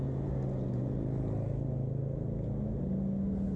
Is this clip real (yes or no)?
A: yes